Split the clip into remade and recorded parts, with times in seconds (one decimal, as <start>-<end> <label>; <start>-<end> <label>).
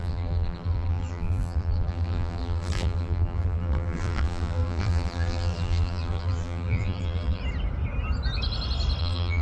0.0-7.4 remade; 7.4-9.0 recorded; 9.0-9.4 remade